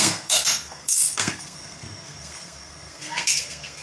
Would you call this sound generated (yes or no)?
yes